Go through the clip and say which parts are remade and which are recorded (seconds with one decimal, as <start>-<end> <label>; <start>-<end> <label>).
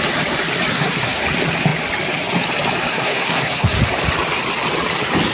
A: 0.0-0.7 recorded; 0.7-1.2 remade; 1.2-2.9 recorded; 2.9-3.8 remade; 3.8-5.3 recorded